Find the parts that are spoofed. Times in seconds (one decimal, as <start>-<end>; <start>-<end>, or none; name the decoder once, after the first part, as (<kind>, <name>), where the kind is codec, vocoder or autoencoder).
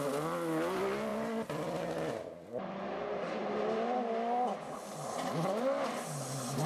none